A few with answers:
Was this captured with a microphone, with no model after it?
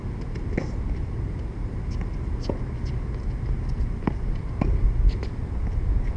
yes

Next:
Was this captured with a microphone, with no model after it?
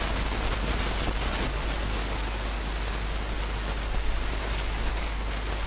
yes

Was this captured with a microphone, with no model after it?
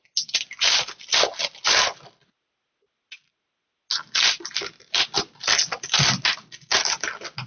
yes